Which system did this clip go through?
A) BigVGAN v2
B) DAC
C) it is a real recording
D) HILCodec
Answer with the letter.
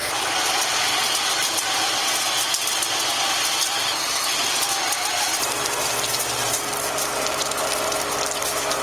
C